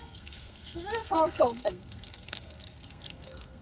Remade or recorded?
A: remade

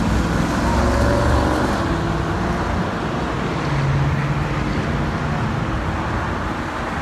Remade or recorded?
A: recorded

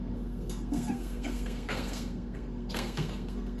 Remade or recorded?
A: remade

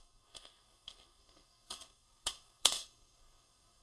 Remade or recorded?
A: remade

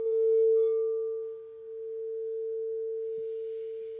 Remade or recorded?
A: recorded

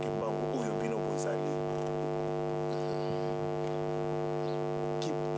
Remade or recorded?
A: recorded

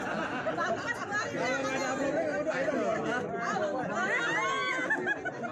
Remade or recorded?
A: recorded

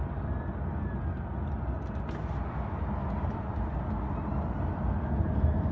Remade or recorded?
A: recorded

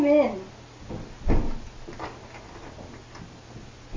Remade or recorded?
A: recorded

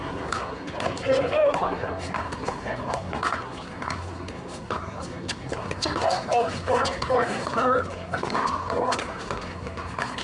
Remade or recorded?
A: remade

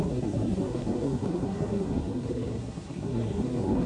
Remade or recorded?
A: remade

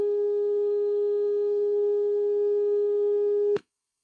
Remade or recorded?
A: remade